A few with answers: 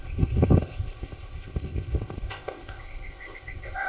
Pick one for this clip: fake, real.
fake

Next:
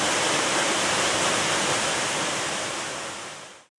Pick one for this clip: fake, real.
fake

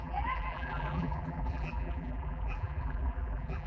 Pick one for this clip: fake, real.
fake